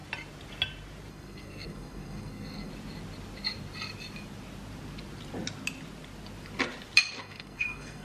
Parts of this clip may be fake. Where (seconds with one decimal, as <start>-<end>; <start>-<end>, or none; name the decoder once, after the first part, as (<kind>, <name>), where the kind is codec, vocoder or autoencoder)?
1.1-2.7 (codec, SNAC); 7.2-8.0